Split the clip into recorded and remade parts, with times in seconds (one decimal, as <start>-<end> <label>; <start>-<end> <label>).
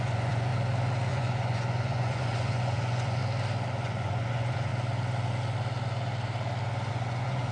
0.0-0.5 remade; 0.5-1.1 recorded; 1.1-3.2 remade; 3.2-3.7 recorded; 3.7-4.7 remade; 4.7-6.9 recorded; 6.9-7.5 remade